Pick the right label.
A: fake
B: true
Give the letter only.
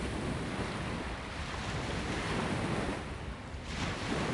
B